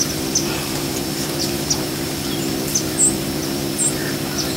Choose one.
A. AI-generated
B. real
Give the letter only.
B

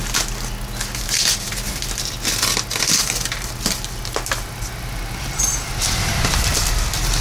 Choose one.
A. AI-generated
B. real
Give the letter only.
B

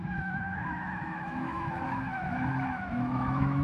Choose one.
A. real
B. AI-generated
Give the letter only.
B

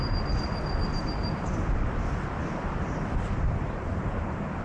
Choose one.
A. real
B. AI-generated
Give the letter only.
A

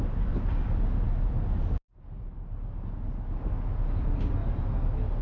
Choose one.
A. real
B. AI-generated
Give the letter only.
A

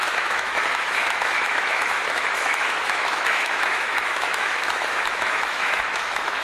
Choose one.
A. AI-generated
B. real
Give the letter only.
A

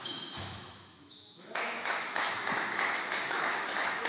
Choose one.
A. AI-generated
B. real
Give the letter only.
A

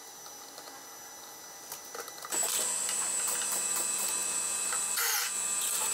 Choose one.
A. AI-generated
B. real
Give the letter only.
B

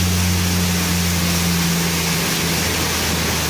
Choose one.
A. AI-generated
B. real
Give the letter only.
B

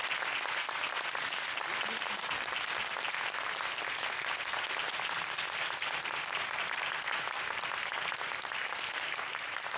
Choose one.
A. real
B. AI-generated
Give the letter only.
A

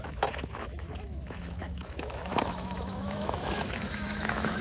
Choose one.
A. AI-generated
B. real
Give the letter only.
A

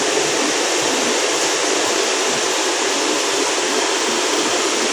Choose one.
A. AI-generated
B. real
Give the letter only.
B